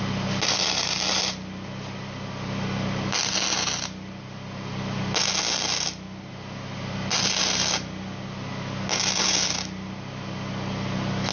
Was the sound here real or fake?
real